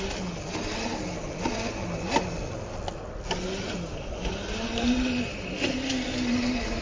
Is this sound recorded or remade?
recorded